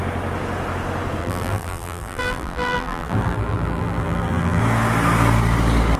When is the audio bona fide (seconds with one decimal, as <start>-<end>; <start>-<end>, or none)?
0.0-1.2; 4.6-6.0